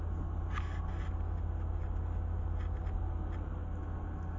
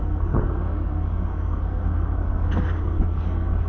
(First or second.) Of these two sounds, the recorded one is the first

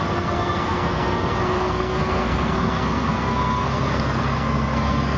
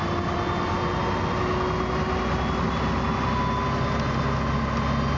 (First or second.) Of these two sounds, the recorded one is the second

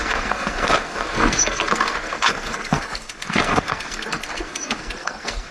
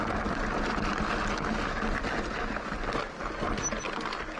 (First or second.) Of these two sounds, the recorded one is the second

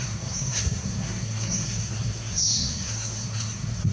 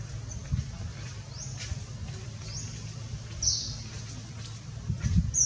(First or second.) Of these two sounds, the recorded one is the second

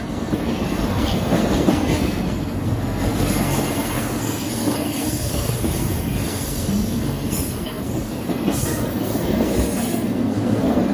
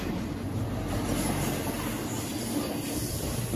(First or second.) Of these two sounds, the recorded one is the second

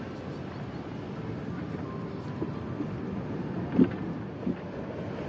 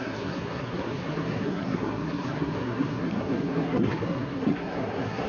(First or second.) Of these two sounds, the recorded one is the first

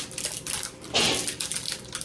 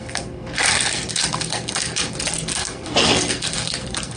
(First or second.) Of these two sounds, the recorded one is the first